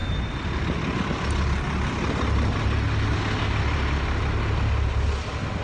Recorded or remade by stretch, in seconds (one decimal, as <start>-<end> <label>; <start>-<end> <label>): 0.0-5.6 recorded